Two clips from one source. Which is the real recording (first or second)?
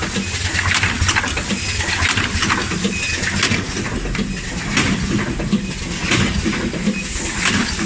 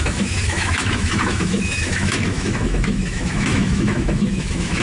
first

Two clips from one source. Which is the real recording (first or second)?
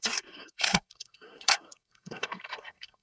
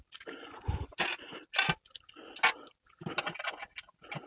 second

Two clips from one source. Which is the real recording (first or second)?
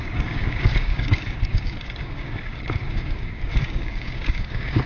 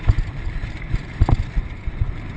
second